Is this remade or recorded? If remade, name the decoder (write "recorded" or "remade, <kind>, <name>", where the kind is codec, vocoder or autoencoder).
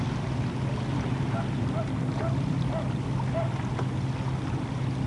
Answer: remade, vocoder, BigVGAN v2